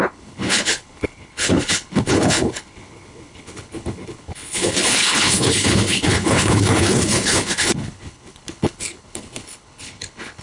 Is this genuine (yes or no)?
no